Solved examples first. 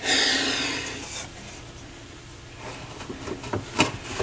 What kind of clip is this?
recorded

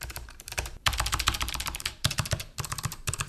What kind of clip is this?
remade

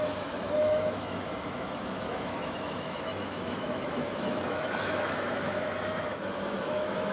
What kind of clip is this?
remade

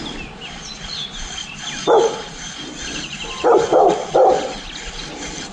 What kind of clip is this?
recorded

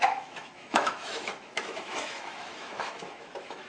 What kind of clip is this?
remade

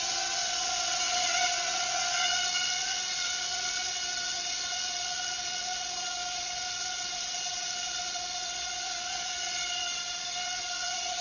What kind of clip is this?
remade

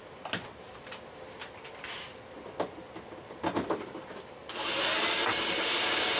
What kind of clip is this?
recorded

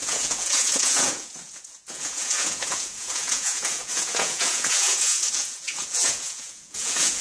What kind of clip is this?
remade